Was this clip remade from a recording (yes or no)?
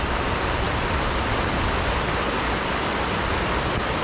no